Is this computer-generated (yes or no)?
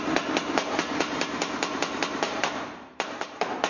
yes